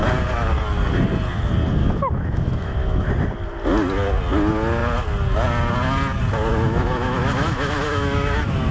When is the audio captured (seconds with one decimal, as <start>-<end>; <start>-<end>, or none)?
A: 0.0-1.8; 3.1-6.5